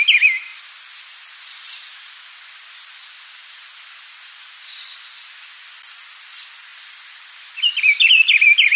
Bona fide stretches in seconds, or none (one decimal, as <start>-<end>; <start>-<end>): 0.0-8.8